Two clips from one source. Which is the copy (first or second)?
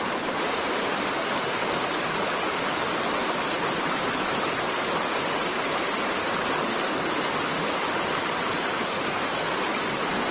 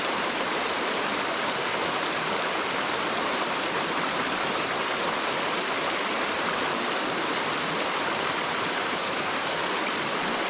second